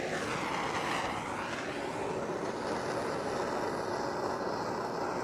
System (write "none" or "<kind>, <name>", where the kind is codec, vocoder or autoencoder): none